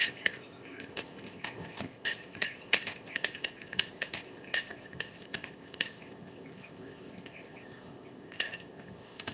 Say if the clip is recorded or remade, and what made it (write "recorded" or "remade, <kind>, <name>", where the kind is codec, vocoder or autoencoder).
remade, codec, ZipCodec